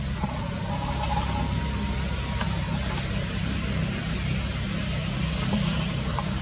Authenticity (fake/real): real